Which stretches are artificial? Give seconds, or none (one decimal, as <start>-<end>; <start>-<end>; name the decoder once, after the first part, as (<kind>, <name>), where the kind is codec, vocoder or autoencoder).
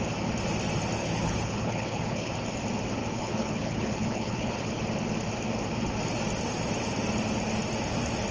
1.0-2.3 (codec, HILCodec); 3.0-4.8